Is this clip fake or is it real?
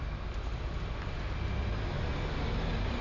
real